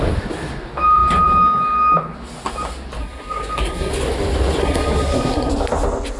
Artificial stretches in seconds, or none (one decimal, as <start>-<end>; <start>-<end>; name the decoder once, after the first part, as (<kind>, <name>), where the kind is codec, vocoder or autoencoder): 3.0-3.9 (codec, SNAC); 4.6-5.5